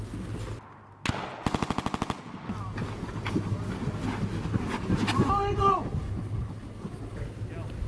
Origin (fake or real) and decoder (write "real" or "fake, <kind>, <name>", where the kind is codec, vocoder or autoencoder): real